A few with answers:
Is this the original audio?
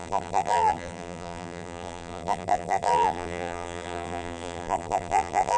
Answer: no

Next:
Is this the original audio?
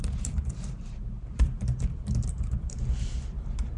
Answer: no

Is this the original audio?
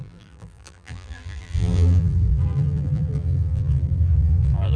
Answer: no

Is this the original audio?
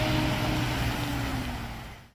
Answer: yes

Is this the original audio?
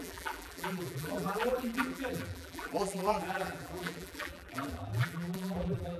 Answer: no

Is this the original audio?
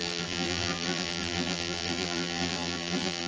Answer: no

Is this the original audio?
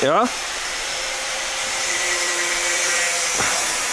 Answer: no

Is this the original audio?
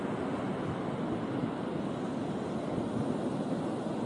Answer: yes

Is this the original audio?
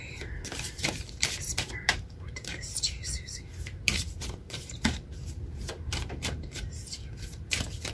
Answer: no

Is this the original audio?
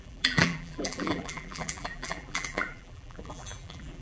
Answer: no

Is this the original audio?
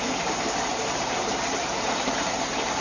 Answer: no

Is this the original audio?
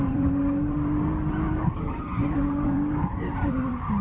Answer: no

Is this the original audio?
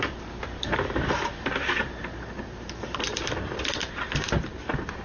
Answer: no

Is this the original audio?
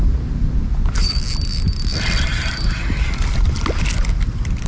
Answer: yes